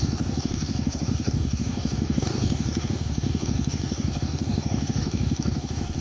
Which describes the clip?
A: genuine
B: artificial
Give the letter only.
B